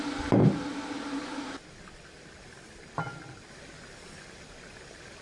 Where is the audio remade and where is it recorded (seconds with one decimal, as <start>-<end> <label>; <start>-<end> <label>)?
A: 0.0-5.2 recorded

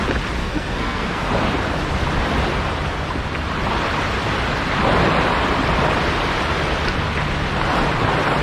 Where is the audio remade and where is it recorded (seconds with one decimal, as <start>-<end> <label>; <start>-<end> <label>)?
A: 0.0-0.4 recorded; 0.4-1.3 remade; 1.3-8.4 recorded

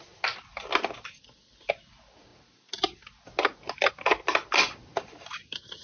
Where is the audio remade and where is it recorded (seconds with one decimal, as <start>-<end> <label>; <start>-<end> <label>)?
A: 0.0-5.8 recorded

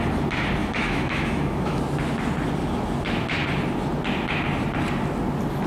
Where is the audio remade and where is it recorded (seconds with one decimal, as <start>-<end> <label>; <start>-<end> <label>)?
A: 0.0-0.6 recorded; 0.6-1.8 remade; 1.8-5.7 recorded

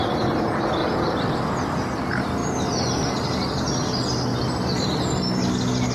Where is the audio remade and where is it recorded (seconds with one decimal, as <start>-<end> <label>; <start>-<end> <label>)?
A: 0.0-0.8 recorded; 0.8-1.4 remade; 1.4-4.3 recorded; 4.3-5.0 remade; 5.0-5.9 recorded

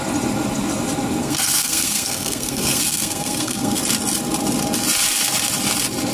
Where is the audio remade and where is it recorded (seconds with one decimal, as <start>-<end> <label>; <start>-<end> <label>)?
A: 0.0-1.2 recorded; 1.2-3.8 remade; 3.8-6.1 recorded

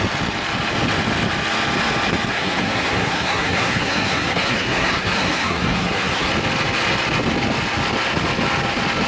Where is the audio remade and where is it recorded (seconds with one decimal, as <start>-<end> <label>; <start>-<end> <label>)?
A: 0.0-2.3 recorded; 2.3-6.3 remade; 6.3-9.1 recorded

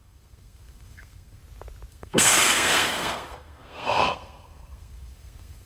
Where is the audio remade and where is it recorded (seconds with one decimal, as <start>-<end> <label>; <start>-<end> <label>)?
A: 0.0-1.4 remade; 1.4-1.9 recorded; 1.9-5.7 remade